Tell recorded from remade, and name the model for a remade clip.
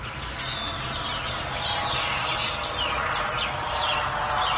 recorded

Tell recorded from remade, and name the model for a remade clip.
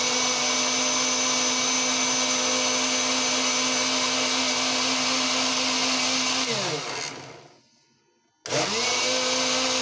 recorded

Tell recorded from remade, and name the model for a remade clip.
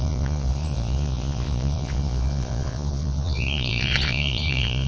remade, vocoder, Vocos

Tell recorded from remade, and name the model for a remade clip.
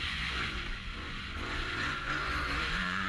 remade, vocoder, Vocos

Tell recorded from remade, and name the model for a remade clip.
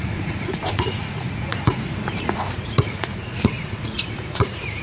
remade, vocoder, Vocos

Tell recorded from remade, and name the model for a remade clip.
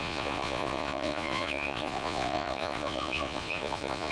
remade, vocoder, Vocos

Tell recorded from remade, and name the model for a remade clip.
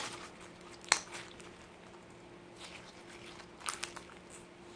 recorded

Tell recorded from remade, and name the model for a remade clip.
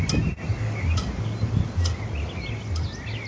recorded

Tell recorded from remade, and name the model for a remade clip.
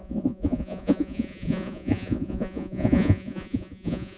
remade, vocoder, Vocos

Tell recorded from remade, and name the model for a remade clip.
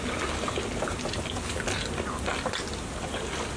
recorded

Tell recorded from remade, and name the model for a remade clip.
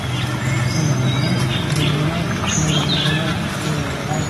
recorded